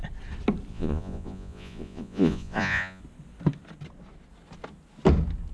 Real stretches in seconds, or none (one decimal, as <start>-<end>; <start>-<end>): 0.0-0.7; 3.0-5.5